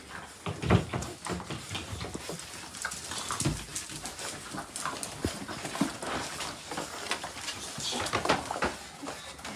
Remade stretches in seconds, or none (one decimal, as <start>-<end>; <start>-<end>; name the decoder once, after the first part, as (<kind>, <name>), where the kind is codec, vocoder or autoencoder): none